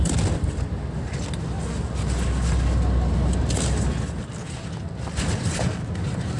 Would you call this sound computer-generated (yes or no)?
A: no